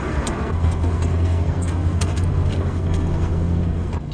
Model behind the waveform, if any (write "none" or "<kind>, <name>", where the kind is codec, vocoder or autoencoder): codec, SNAC